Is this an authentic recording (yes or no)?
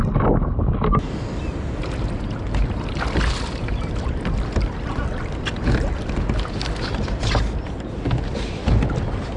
yes